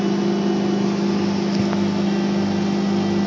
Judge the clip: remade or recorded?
recorded